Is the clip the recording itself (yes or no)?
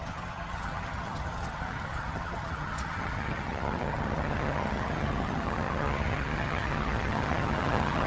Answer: no